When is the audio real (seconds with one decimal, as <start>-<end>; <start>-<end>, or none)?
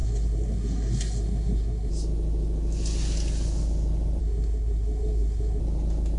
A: 1.9-4.2; 5.6-6.2